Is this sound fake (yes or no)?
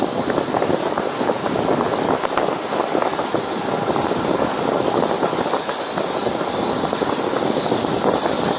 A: no